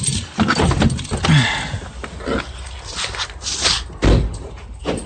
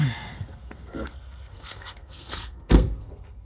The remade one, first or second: second